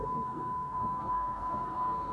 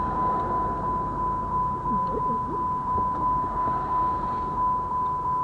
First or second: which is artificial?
first